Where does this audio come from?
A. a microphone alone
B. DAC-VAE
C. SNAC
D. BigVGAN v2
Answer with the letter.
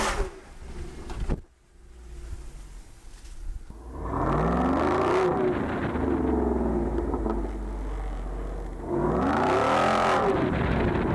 A